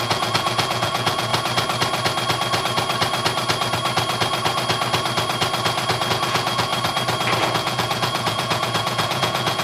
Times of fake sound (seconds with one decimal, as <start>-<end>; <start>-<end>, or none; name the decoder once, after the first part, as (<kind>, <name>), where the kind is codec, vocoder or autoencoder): 0.0-1.3 (vocoder, Vocos); 6.1-6.7; 7.4-9.6